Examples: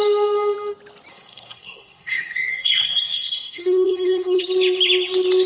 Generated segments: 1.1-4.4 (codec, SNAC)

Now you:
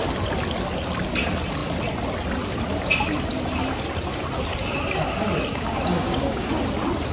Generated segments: 5.5-6.5 (codec, DAC)

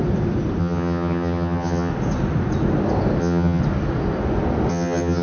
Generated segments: 0.6-1.9 (vocoder, HiFi-GAN); 3.2-3.6; 4.7-5.2